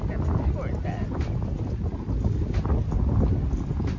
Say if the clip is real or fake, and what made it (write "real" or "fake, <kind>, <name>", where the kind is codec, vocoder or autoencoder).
real